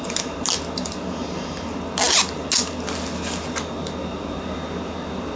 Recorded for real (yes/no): yes